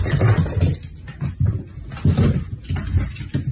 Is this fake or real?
real